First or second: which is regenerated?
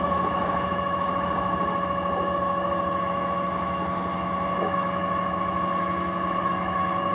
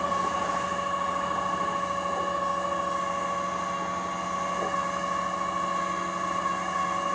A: first